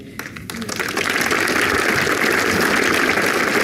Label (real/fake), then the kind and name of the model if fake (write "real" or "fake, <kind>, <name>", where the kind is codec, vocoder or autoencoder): real